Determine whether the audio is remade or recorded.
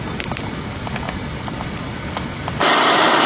recorded